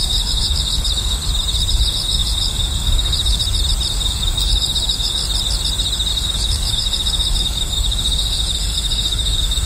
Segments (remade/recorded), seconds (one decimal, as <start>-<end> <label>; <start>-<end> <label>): 0.0-1.2 remade; 1.2-1.7 recorded; 1.7-3.4 remade; 3.4-3.9 recorded; 3.9-5.2 remade; 5.2-6.1 recorded; 6.1-9.7 remade